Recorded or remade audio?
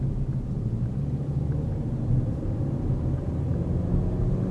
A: recorded